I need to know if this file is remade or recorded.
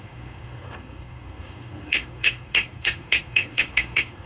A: remade